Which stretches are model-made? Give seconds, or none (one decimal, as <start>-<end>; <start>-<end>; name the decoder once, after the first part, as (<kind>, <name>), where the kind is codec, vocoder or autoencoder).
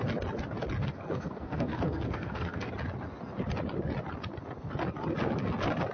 0.8-2.7 (codec, SNAC)